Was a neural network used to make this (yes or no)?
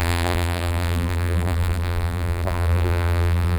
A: yes